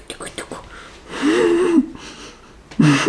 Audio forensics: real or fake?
real